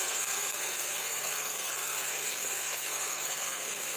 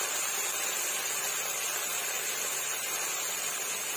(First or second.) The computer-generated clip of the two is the first